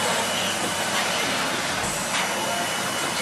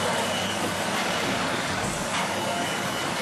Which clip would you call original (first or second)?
first